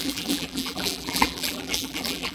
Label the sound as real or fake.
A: fake